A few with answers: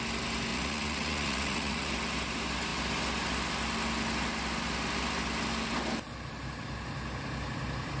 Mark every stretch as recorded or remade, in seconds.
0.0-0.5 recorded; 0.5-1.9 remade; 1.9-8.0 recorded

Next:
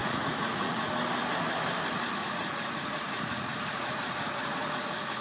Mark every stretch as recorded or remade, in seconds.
0.0-0.9 remade; 0.9-2.2 recorded; 2.2-5.2 remade

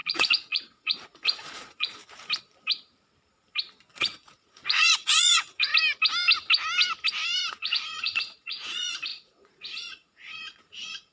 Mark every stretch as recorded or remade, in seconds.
0.0-2.0 remade; 2.0-3.9 recorded; 3.9-5.7 remade; 5.7-7.5 recorded; 7.5-11.1 remade

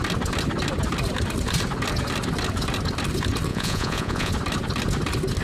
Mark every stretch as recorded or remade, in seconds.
0.0-3.5 recorded; 3.5-4.3 remade; 4.3-5.4 recorded

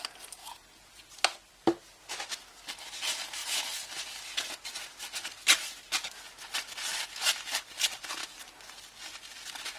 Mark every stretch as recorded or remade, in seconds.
0.0-0.4 recorded; 0.4-1.1 remade; 1.1-9.8 recorded

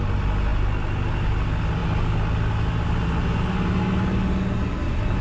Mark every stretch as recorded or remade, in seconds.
0.0-5.2 recorded

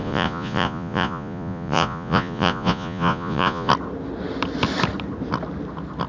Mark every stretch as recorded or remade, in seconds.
0.0-3.7 remade; 3.7-6.1 recorded